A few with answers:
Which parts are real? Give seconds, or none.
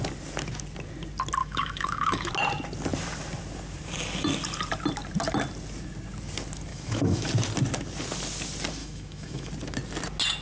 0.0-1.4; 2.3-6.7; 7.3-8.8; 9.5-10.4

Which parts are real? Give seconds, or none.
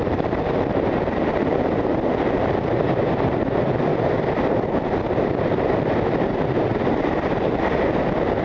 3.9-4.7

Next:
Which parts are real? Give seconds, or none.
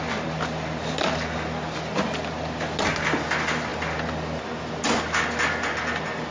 0.0-6.3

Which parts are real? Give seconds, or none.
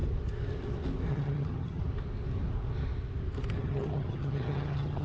0.0-1.1; 1.8-3.6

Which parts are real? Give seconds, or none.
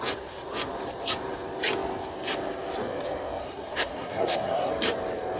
0.0-3.4; 4.7-5.4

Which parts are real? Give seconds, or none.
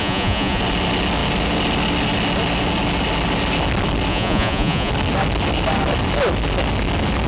0.6-4.1; 4.9-7.3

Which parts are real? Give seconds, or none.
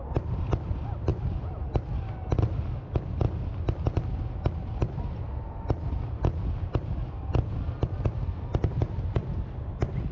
0.0-10.1